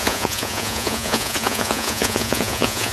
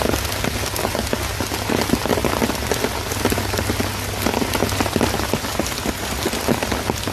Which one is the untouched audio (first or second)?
second